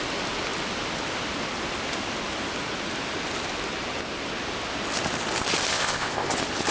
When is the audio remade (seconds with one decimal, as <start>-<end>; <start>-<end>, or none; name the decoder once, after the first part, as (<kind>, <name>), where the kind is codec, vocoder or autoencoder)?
5.7-6.3 (codec, ZipCodec)